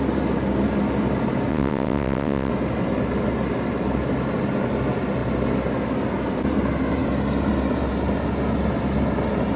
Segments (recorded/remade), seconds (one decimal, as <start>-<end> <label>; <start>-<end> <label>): 0.0-1.5 recorded; 1.5-2.5 remade; 2.5-9.6 recorded

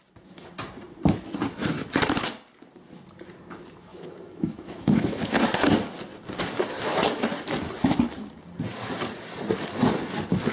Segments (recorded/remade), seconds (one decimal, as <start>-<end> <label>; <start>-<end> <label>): 0.0-3.9 recorded; 3.9-5.3 remade; 5.3-10.5 recorded

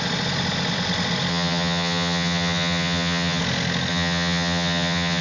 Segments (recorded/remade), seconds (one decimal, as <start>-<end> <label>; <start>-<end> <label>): 0.0-1.3 recorded; 1.3-3.4 remade; 3.4-3.9 recorded; 3.9-5.2 remade

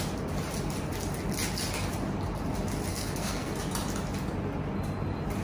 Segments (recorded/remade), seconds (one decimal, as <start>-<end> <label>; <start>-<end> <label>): 0.0-2.9 recorded; 2.9-3.5 remade; 3.5-5.4 recorded

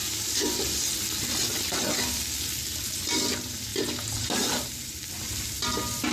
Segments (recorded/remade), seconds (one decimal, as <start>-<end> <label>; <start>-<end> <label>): 0.0-6.1 recorded

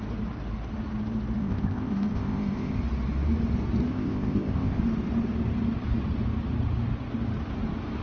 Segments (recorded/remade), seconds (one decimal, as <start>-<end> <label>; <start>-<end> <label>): 0.0-1.4 recorded; 1.4-2.8 remade; 2.8-3.9 recorded; 3.9-4.8 remade; 4.8-8.0 recorded

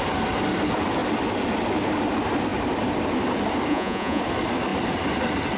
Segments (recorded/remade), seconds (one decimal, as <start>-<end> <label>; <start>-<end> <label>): 0.0-3.7 recorded; 3.7-4.2 remade; 4.2-5.6 recorded